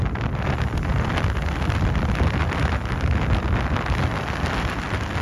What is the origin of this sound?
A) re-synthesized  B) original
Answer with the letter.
B